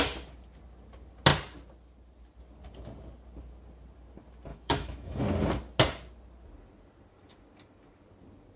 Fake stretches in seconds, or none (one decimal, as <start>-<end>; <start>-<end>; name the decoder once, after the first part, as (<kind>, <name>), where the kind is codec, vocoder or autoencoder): 4.5-5.2 (autoencoder, DAC-VAE)